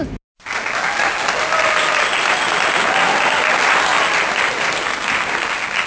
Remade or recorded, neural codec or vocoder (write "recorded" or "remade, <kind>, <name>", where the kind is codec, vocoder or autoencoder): recorded